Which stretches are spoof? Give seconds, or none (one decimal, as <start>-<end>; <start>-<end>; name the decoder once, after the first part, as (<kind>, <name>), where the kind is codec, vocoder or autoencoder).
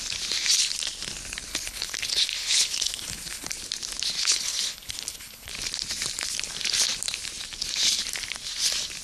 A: 1.5-3.5 (codec, HILCodec); 4.2-5.5